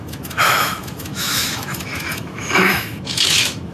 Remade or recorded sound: remade